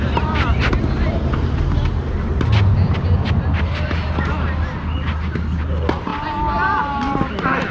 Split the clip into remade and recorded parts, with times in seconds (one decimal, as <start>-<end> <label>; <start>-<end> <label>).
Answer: 0.0-2.1 remade; 2.1-7.7 recorded